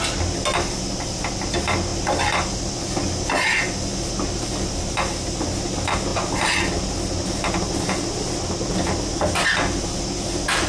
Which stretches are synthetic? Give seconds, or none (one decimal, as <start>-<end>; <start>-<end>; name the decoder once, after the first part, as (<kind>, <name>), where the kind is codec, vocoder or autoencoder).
none